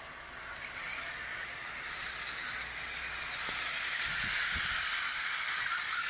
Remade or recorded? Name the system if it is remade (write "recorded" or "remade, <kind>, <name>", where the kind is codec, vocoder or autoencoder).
recorded